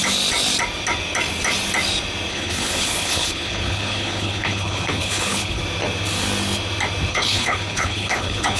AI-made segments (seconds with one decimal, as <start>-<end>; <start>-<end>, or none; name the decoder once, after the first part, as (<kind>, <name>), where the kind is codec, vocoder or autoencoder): 2.3-5.6 (codec, HILCodec); 7.1-8.6